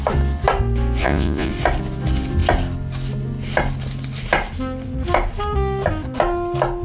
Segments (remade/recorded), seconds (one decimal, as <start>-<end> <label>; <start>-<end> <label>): 0.0-1.0 recorded; 1.0-1.5 remade; 1.5-6.8 recorded